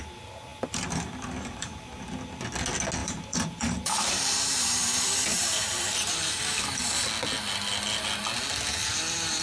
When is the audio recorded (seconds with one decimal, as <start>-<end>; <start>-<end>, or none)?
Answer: 0.0-0.5; 2.0-3.0; 6.5-9.4